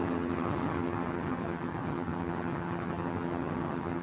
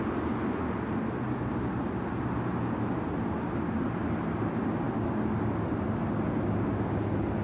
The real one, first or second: second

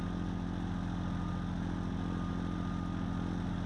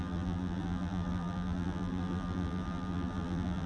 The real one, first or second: first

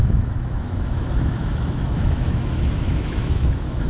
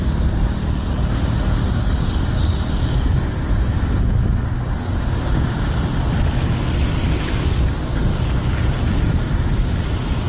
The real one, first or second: second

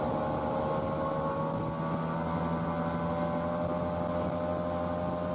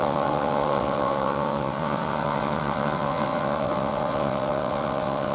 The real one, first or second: first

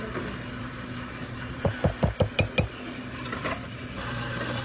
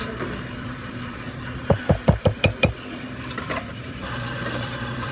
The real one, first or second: first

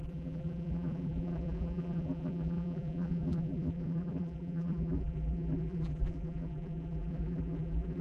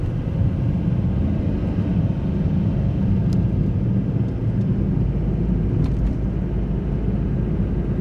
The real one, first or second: second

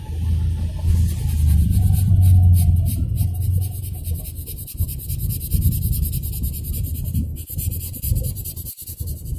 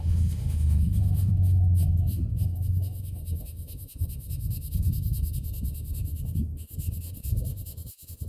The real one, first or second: first